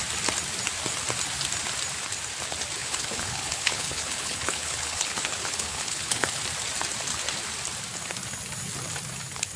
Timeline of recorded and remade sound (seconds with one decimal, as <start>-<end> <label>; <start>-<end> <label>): 0.0-2.8 recorded; 2.8-6.4 remade; 6.4-9.6 recorded